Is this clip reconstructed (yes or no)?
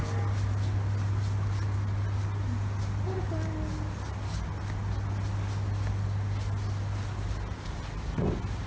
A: no